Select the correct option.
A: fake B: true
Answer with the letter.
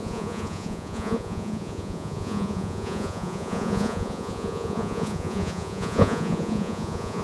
A